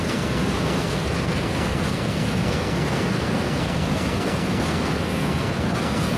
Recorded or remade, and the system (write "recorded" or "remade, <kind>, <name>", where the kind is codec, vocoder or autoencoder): remade, codec, SNAC